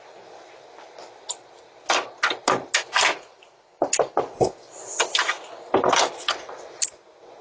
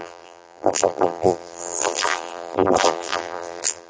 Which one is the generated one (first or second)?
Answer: second